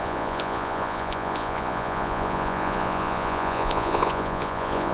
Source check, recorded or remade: remade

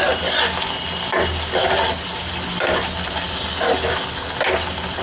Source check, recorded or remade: recorded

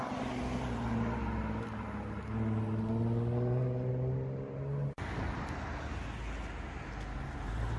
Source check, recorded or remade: recorded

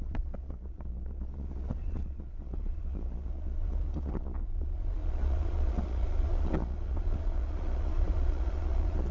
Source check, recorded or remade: remade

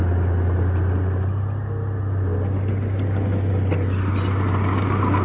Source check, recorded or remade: recorded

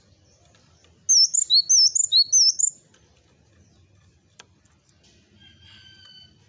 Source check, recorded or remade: recorded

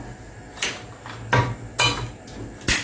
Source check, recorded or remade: recorded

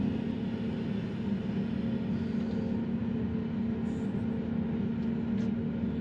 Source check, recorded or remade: recorded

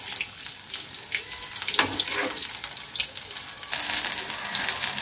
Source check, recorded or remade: recorded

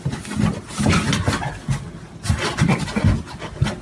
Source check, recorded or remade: recorded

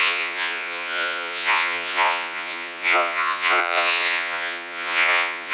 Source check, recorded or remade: remade